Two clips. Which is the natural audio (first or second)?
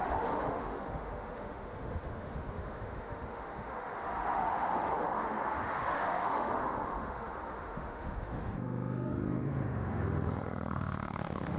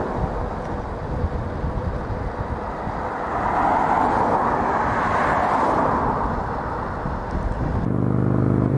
second